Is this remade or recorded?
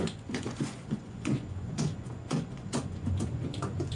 remade